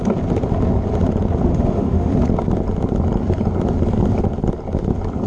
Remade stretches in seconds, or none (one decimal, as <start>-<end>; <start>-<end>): 1.5-2.1